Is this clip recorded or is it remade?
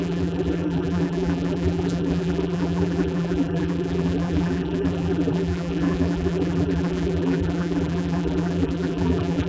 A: remade